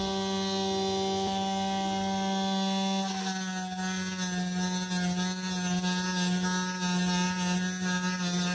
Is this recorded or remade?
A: recorded